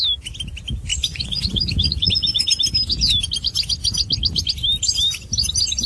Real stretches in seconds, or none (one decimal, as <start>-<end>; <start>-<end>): 0.0-0.9; 2.1-5.9